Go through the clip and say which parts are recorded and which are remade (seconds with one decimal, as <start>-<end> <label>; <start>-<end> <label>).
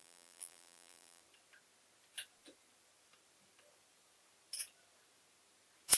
0.0-1.2 remade; 1.2-6.0 recorded